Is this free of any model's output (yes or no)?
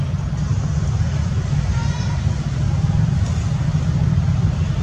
yes